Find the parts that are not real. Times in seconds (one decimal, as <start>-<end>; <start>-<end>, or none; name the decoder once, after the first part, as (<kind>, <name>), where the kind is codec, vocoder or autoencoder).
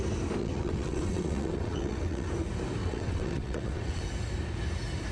0.4-2.3 (vocoder, WaveNeXt); 2.8-4.0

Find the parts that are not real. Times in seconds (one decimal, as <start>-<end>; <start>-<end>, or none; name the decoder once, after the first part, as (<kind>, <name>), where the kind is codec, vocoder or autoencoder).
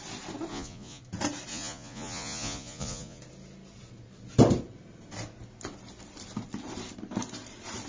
0.5-1.0 (vocoder, Vocos); 1.5-3.2